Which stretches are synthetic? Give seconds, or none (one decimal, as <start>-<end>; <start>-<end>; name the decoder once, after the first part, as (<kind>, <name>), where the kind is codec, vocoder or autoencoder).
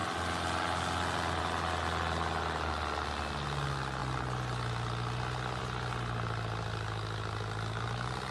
none